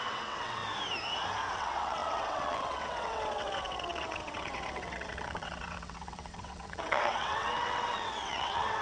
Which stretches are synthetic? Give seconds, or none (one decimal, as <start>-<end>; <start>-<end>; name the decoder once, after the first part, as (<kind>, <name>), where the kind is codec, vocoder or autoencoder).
0.0-0.6 (vocoder, WaveNeXt); 1.5-8.8